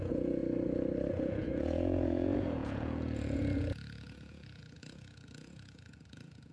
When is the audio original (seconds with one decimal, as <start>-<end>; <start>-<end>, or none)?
0.4-1.1